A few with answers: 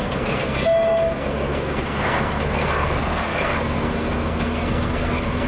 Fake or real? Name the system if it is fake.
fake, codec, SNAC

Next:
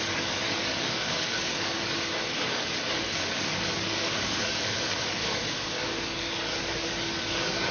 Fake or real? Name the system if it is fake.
fake, codec, DAC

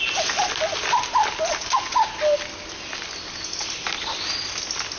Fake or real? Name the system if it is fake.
real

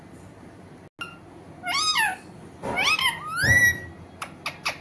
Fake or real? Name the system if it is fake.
real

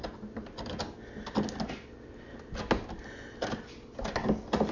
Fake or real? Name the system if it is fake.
real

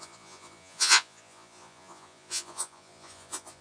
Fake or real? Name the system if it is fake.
fake, vocoder, Vocos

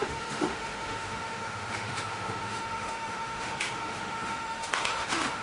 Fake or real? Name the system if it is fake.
fake, autoencoder, DAC-VAE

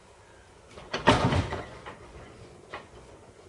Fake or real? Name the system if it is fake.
fake, vocoder, Vocos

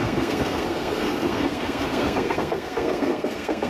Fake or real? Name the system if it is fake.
fake, codec, SNAC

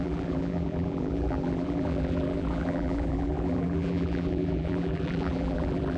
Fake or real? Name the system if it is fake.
fake, vocoder, BigVGAN v2